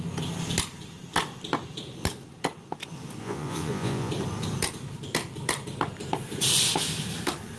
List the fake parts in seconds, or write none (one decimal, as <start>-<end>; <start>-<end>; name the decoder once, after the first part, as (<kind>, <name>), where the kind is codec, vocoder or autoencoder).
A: 3.2-4.1 (vocoder, Vocos)